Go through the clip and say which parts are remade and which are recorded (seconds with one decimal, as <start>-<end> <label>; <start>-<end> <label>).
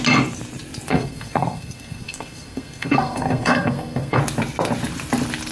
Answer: 0.0-0.9 recorded; 0.9-4.2 remade; 4.2-5.5 recorded